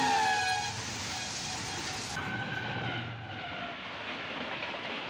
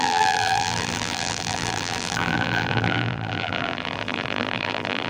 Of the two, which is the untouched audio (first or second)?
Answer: first